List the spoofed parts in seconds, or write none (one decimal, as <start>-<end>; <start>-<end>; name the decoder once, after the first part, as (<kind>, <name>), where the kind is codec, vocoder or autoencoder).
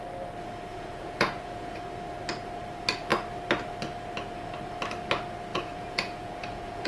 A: 0.7-1.8 (vocoder, Vocos); 5.5-6.9